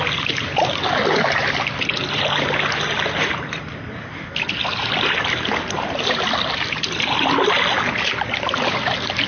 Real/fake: real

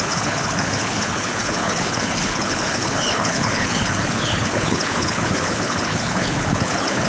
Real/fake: fake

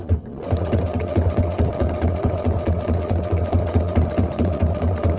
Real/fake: fake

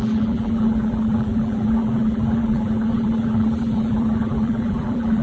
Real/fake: fake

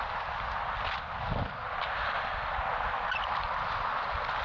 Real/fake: real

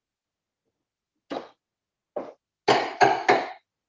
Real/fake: real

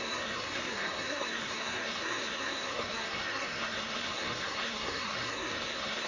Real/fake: fake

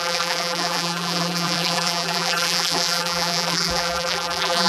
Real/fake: fake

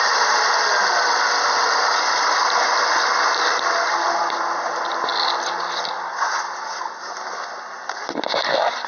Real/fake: real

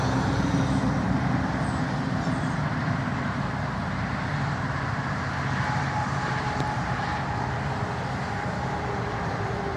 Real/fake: fake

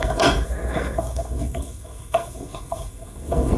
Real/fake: fake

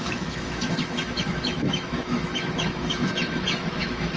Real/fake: fake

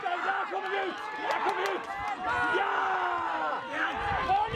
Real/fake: real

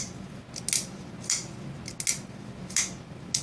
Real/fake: real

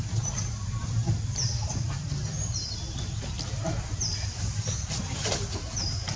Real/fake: fake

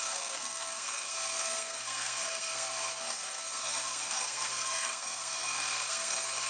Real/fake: fake